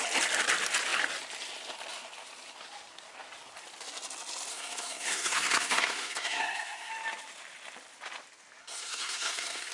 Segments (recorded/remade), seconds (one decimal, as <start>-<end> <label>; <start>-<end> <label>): 0.0-4.5 recorded; 4.5-6.9 remade; 6.9-8.6 recorded; 8.6-9.7 remade